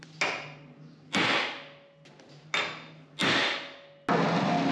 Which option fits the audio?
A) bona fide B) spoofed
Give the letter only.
A